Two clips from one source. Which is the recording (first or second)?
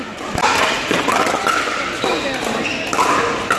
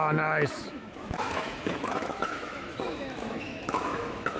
first